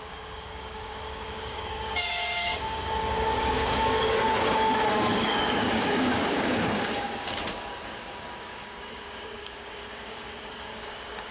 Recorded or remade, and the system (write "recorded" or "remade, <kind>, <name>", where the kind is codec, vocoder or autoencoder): remade, codec, DAC